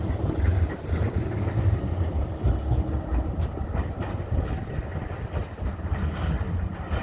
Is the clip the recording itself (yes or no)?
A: yes